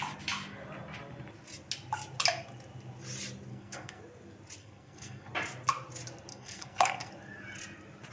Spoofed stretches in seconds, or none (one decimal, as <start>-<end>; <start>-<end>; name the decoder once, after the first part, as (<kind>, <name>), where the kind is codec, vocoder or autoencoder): 3.5-4.0 (codec, SNAC); 4.6-5.3; 6.3-7.1